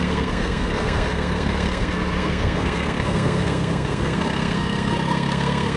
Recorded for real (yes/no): no